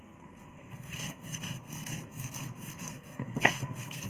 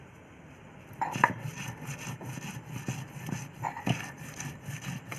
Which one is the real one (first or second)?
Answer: second